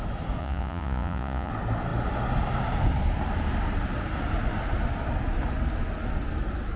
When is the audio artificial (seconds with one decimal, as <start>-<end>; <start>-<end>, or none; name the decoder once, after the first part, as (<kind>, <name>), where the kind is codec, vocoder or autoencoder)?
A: 0.4-1.5 (vocoder, Vocos)